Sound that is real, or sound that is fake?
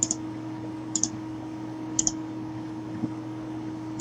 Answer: fake